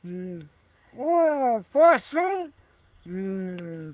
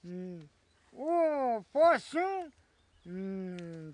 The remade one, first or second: first